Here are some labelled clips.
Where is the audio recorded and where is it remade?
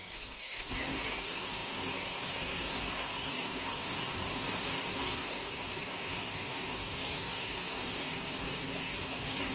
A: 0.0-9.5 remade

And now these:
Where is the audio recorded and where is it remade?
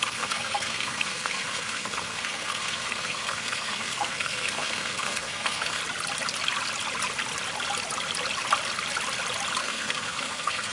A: 0.0-5.8 remade; 5.8-9.6 recorded; 9.6-10.7 remade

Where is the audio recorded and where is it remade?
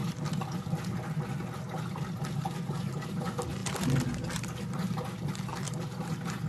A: 0.0-1.9 recorded; 1.9-3.6 remade; 3.6-6.5 recorded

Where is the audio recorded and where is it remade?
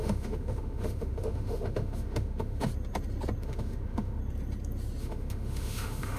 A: 0.0-2.7 remade; 2.7-3.4 recorded; 3.4-4.2 remade; 4.2-5.0 recorded; 5.0-6.2 remade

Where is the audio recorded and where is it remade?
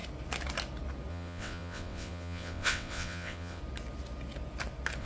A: 0.0-1.1 recorded; 1.1-3.6 remade; 3.6-5.0 recorded